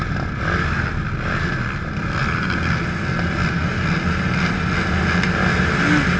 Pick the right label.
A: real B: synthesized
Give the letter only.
A